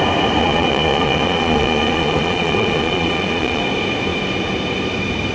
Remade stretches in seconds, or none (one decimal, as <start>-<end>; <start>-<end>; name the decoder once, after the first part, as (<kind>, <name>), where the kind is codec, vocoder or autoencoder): 0.4-3.6 (vocoder, Vocos)